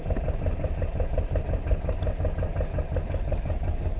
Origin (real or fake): real